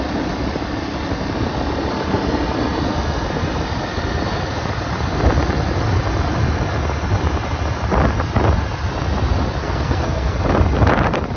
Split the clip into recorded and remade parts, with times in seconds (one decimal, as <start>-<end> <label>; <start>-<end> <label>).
0.0-9.6 recorded; 9.6-10.4 remade; 10.4-11.4 recorded